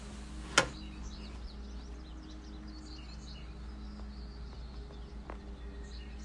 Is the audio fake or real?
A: real